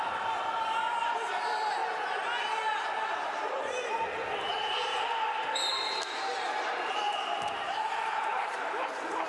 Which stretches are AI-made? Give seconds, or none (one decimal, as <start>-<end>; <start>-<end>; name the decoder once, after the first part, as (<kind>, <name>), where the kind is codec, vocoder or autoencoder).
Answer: 0.0-1.8 (vocoder, BigVGAN v2); 2.6-9.3